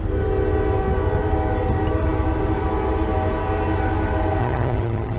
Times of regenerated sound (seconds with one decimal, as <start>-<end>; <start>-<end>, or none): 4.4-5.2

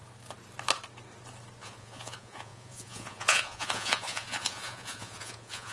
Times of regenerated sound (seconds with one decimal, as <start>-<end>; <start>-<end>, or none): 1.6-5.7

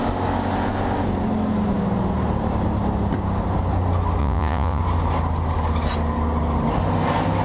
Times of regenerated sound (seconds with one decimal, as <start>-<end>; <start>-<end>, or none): 4.2-4.8